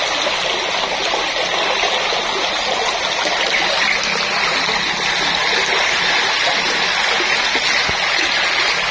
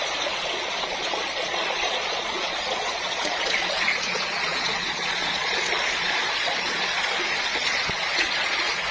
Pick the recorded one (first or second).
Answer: first